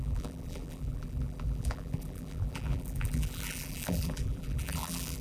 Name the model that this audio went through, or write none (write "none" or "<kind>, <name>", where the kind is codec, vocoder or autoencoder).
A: vocoder, BigVGAN v2